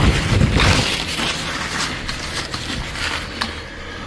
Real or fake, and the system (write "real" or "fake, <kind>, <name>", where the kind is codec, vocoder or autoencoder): real